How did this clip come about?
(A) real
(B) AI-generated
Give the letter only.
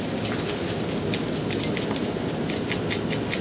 A